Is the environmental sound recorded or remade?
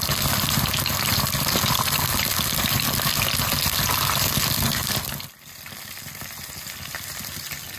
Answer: recorded